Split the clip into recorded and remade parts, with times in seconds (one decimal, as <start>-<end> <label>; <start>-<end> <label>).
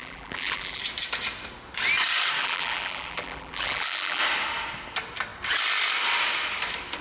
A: 0.0-0.8 remade; 0.8-2.4 recorded; 2.4-4.2 remade; 4.2-7.0 recorded